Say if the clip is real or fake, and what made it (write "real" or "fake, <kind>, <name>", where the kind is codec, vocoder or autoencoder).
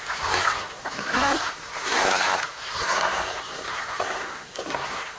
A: fake, codec, SNAC